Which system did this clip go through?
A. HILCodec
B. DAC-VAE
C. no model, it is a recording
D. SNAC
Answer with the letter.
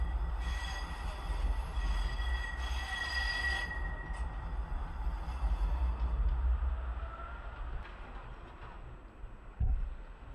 C